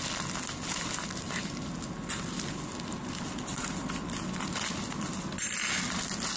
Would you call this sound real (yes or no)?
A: yes